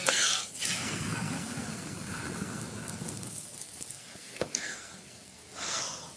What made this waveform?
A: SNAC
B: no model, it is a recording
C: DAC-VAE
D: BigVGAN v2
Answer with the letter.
A